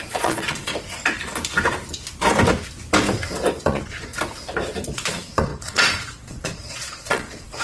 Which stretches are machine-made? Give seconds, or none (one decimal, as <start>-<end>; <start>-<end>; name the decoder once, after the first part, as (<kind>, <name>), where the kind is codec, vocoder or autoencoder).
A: 0.0-0.7 (vocoder, Vocos); 3.6-4.1; 4.9-7.6